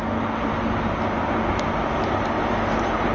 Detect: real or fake real